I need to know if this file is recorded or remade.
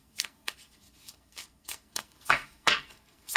remade